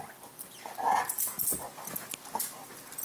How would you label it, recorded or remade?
recorded